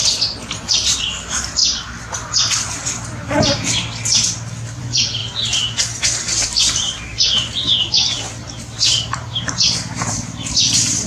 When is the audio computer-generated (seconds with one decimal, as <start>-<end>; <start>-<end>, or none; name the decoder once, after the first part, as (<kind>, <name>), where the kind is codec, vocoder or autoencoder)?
1.0-1.6 (vocoder, BigVGAN v2); 4.8-5.2; 7.3-11.1